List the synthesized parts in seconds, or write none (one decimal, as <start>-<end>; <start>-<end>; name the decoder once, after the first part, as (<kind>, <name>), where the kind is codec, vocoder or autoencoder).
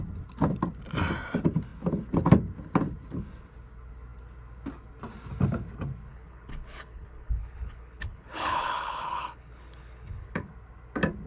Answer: 6.1-10.5 (codec, HILCodec)